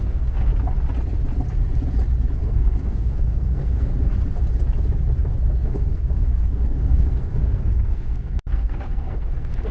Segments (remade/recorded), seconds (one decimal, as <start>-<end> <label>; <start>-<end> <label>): 0.0-0.5 remade; 0.5-2.4 recorded; 2.4-3.9 remade; 3.9-5.5 recorded; 5.5-9.7 remade